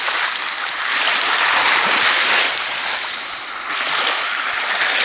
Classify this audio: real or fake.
real